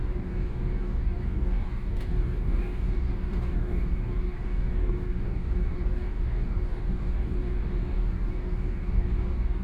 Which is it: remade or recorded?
remade